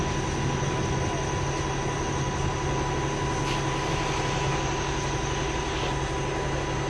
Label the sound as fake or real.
real